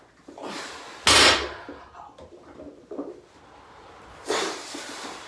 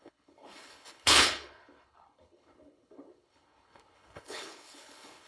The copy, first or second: second